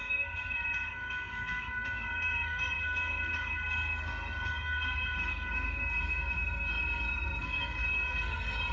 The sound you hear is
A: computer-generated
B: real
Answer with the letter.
A